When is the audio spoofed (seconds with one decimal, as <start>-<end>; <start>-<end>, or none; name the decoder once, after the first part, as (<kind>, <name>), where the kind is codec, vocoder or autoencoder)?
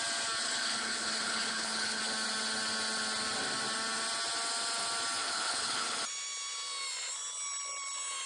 0.4-2.0 (codec, HILCodec); 5.2-6.0